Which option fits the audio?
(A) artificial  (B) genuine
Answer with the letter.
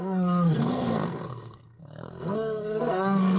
A